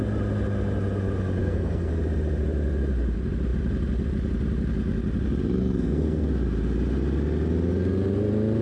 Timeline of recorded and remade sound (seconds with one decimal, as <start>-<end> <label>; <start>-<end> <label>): 0.0-1.4 recorded; 1.4-1.9 remade; 1.9-5.6 recorded; 5.6-6.3 remade; 6.3-8.6 recorded